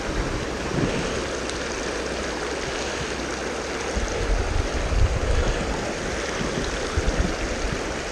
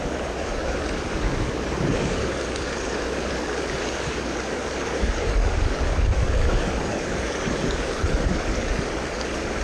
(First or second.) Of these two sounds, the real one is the first